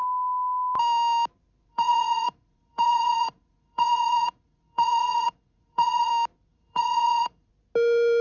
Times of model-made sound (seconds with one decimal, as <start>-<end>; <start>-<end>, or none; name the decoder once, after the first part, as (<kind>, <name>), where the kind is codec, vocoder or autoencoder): 1.7-6.1 (vocoder, Vocos); 6.5-7.5

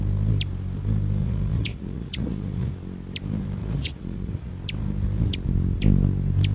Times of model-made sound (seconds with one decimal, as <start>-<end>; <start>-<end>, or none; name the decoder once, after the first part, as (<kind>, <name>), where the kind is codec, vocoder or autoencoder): 1.2-2.7 (vocoder, Vocos); 3.6-4.5

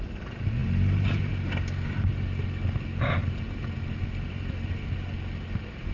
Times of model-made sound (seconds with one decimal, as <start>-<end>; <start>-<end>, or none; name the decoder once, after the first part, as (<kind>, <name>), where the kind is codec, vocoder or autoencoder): none

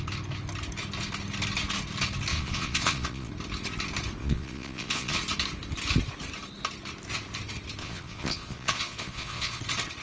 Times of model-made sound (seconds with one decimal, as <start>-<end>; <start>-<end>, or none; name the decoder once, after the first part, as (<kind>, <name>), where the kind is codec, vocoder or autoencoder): 2.3-3.3 (vocoder, Vocos); 4.2-5.2; 7.8-9.6